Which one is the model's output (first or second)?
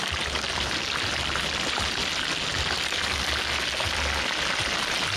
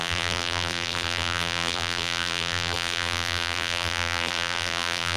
second